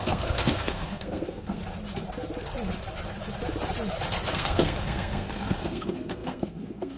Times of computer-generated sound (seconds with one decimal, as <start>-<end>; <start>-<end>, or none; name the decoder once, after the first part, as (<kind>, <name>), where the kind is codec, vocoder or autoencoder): 0.0-1.6 (codec, SNAC); 4.3-7.0